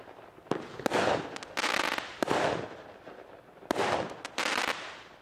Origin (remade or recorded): recorded